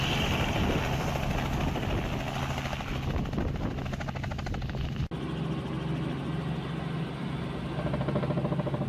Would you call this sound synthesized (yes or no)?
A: no